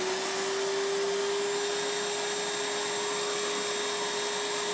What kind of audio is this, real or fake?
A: real